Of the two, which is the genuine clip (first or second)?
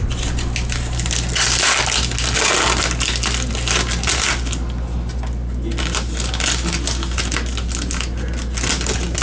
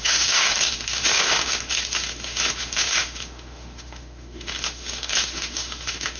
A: first